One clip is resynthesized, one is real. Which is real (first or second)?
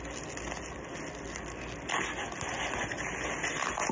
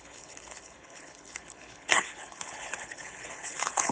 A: first